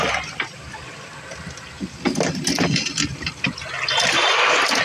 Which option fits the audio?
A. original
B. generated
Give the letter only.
A